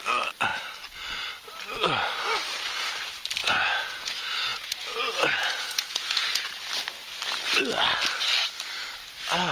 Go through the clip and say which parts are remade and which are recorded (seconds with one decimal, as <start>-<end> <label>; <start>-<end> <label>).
0.0-3.4 recorded; 3.4-4.1 remade; 4.1-4.5 recorded; 4.5-6.6 remade; 6.6-9.5 recorded